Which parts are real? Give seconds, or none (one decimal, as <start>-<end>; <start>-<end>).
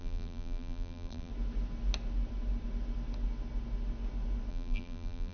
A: 1.3-4.5